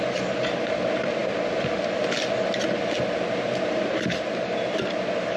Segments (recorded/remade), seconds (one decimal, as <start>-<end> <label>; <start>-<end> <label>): 0.0-5.4 recorded